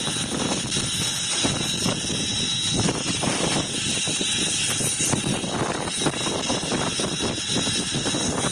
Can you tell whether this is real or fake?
real